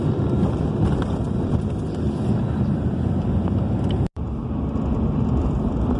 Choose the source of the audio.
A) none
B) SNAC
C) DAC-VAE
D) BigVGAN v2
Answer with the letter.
D